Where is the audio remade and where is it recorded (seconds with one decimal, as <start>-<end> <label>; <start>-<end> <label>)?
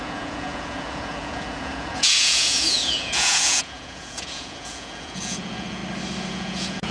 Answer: 0.0-5.8 remade; 5.8-6.3 recorded; 6.3-6.9 remade